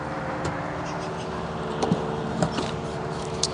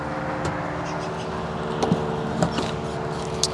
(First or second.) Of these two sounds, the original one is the second